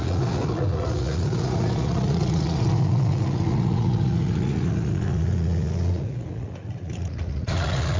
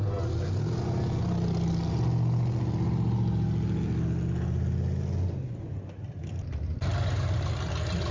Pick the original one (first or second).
second